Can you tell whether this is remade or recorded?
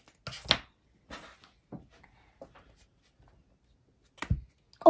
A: recorded